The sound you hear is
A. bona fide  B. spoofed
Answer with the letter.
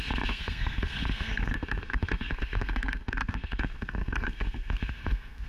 B